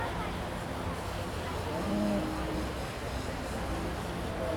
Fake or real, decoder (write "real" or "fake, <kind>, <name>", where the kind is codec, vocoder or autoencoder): real